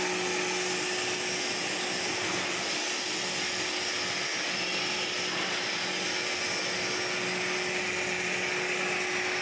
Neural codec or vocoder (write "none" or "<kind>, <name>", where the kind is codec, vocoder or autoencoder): none